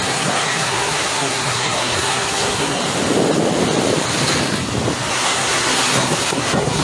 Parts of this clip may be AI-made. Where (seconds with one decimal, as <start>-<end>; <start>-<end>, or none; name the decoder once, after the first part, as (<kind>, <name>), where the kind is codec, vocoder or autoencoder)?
0.0-2.8 (codec, SNAC); 5.1-6.8